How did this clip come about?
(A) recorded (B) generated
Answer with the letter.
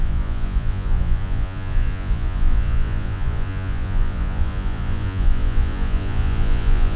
B